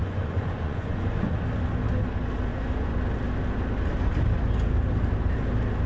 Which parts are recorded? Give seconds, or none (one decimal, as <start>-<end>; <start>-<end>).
1.3-2.5; 3.0-5.9